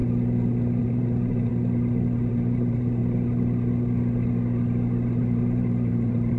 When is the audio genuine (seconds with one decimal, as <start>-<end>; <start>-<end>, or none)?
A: 0.0-0.8; 1.5-2.3; 3.0-5.2